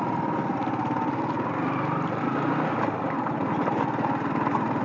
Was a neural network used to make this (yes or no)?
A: no